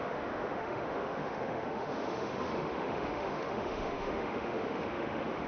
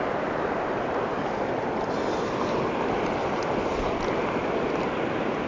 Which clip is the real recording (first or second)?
second